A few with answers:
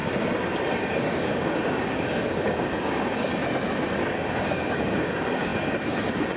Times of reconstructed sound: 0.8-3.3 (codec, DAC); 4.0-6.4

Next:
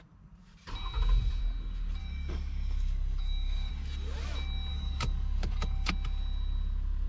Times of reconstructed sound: 2.0-3.7 (codec, DAC); 4.7-5.9

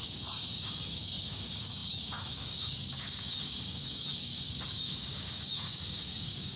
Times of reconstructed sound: 0.0-6.6 (codec, DAC)

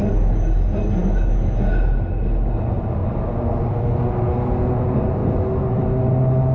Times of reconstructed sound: none